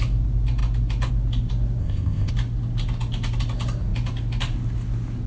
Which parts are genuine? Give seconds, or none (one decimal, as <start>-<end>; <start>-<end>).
0.0-1.8; 2.3-5.3